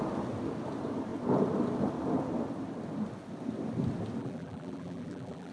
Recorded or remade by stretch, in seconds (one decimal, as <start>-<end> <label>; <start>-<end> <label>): 0.0-4.2 recorded; 4.2-5.5 remade